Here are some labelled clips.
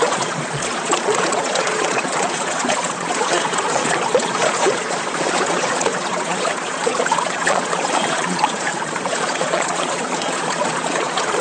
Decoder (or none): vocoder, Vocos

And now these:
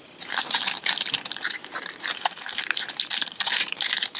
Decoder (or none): vocoder, BigVGAN v2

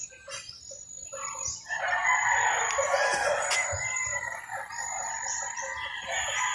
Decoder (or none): vocoder, BigVGAN v2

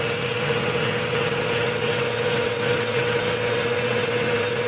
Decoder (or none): vocoder, WaveNeXt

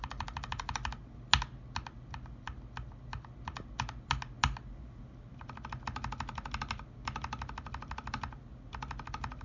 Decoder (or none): none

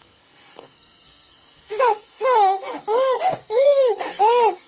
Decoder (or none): codec, SNAC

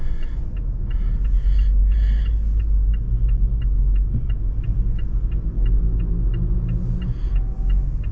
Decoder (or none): none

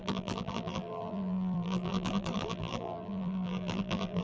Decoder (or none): vocoder, BigVGAN v2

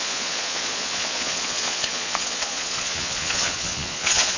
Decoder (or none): vocoder, Vocos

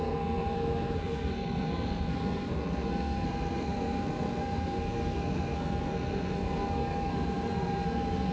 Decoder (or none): codec, SNAC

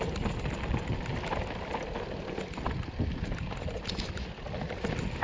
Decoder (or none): none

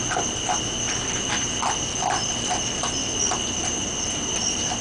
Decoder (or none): none